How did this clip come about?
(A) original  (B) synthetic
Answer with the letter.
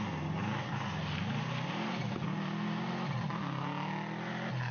A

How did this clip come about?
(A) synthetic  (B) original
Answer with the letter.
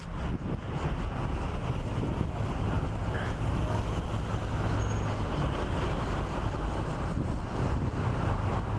B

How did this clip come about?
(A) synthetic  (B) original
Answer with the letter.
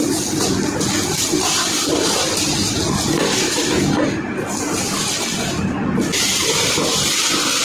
B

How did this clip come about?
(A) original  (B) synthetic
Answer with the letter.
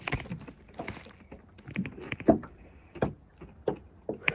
A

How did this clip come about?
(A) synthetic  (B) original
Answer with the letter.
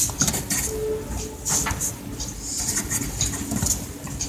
B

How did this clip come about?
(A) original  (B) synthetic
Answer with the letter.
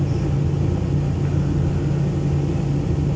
A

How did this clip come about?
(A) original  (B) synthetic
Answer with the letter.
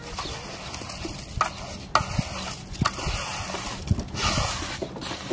A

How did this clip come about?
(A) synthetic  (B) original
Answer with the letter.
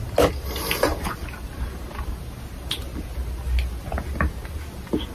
B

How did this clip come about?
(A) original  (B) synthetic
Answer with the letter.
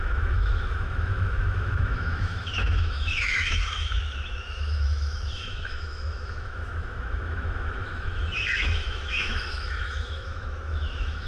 B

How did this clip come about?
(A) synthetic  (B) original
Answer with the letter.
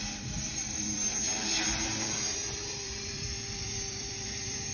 A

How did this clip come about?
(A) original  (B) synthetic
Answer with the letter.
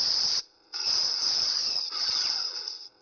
B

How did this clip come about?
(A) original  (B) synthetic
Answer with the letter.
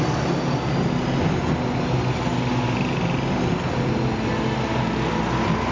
A